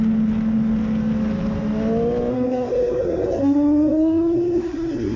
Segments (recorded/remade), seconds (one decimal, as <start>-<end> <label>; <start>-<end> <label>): 0.0-2.3 recorded; 2.3-5.2 remade